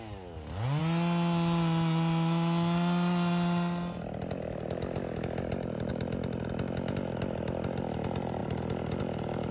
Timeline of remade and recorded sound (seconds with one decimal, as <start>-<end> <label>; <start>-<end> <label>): 0.0-9.5 recorded